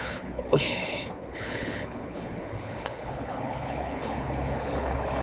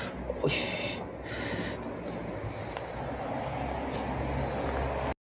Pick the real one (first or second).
second